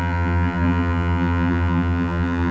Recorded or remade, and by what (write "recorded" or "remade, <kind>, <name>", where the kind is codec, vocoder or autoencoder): remade, vocoder, BigVGAN v2